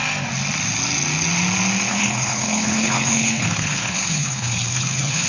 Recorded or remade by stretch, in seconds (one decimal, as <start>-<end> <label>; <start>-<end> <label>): 0.0-1.9 recorded; 1.9-5.3 remade